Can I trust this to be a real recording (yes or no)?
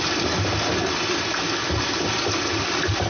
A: yes